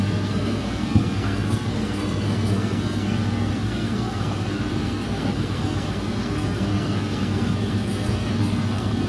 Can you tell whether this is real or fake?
fake